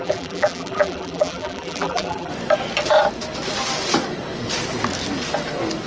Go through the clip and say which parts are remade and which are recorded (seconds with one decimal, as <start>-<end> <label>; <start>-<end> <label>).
0.0-2.3 remade; 2.3-5.9 recorded

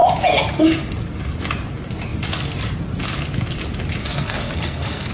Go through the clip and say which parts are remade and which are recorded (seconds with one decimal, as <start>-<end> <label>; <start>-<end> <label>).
0.0-4.0 recorded; 4.0-5.1 remade

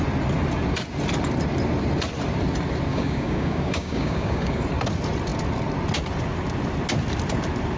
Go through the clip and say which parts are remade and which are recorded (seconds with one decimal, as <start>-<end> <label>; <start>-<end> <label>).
0.0-2.9 recorded; 2.9-4.6 remade; 4.6-7.8 recorded

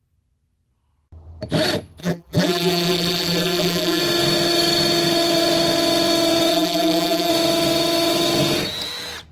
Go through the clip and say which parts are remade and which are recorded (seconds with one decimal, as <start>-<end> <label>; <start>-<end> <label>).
0.0-2.0 recorded; 2.0-4.0 remade; 4.0-6.5 recorded; 6.5-7.3 remade; 7.3-9.3 recorded

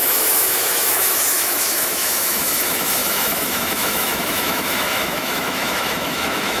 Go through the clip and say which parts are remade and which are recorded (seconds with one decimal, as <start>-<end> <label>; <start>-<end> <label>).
0.0-6.6 remade

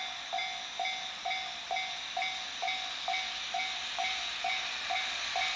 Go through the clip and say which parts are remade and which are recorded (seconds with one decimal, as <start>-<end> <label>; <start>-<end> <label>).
0.0-5.6 recorded

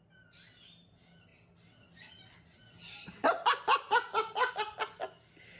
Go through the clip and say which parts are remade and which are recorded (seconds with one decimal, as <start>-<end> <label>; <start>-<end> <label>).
0.0-5.6 recorded